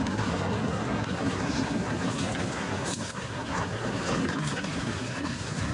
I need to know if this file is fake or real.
fake